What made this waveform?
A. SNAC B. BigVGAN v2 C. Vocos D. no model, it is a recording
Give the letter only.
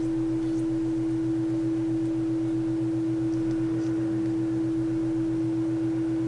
D